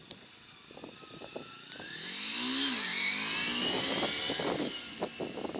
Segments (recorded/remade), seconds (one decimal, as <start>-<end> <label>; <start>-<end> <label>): 0.0-5.6 recorded